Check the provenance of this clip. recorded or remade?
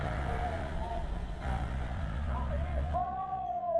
remade